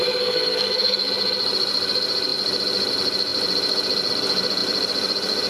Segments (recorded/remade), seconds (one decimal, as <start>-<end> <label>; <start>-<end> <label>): 0.0-1.1 remade; 1.1-5.5 recorded